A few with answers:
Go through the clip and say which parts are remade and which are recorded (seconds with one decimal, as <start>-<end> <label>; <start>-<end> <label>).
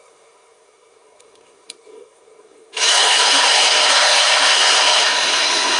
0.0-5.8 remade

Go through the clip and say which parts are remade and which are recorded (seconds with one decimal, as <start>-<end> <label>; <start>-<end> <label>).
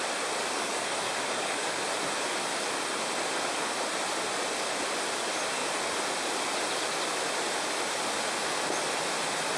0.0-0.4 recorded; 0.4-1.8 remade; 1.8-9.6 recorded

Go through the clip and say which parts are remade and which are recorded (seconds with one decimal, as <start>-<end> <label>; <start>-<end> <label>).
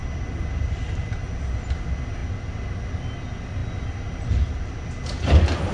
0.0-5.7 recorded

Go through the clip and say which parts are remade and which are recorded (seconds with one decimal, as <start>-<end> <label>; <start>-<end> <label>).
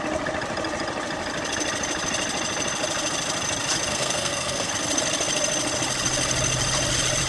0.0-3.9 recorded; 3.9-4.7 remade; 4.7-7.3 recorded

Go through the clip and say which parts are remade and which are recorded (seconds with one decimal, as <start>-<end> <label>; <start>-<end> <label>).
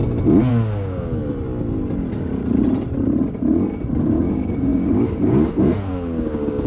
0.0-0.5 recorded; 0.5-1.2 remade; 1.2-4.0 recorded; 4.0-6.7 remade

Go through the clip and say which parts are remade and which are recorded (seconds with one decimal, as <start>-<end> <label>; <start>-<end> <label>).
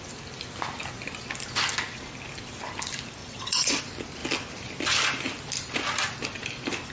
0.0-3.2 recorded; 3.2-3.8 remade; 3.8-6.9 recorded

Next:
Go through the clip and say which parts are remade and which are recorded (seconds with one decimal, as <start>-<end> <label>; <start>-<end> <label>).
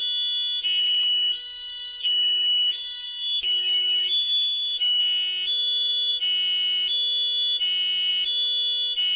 0.0-0.8 recorded; 0.8-5.0 remade; 5.0-9.2 recorded